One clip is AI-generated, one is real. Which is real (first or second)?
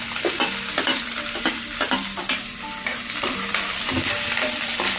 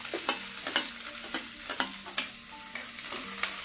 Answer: second